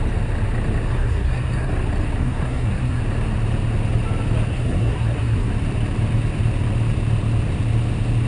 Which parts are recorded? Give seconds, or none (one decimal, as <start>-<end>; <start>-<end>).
0.0-0.9; 1.7-2.2; 3.0-4.5; 5.5-8.3